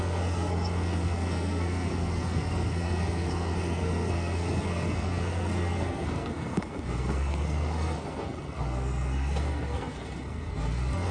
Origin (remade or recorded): remade